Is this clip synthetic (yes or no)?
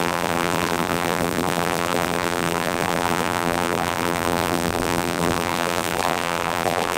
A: yes